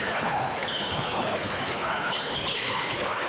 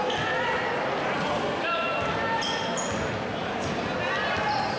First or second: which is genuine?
second